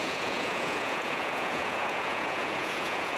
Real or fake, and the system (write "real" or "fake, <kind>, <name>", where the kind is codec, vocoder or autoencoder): fake, vocoder, Vocos